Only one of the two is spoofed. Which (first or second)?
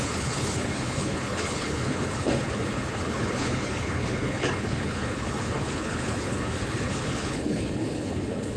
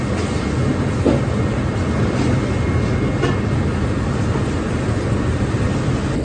first